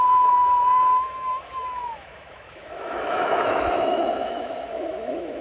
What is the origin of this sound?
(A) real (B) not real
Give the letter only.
B